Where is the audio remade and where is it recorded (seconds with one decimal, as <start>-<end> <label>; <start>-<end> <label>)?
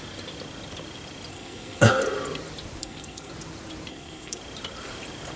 0.0-1.3 recorded; 1.3-2.0 remade; 2.0-2.8 recorded; 2.8-3.3 remade; 3.3-3.9 recorded; 3.9-4.4 remade; 4.4-5.4 recorded